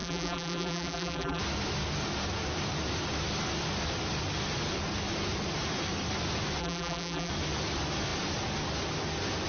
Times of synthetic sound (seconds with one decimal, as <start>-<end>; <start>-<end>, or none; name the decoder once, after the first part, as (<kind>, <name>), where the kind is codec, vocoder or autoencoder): 0.0-1.4 (vocoder, BigVGAN v2); 6.6-7.3